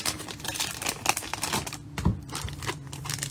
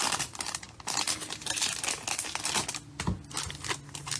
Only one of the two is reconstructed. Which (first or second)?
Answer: first